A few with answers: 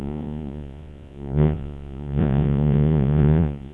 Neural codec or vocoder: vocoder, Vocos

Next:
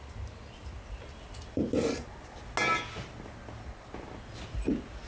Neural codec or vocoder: none